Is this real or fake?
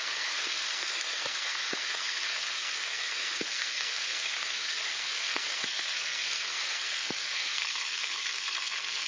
fake